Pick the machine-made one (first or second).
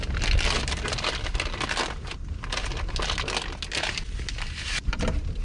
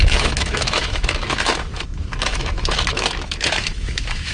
second